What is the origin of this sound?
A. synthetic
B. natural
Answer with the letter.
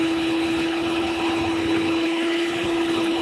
A